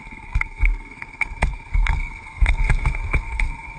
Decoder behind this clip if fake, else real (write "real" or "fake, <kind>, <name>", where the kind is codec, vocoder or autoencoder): fake, codec, SNAC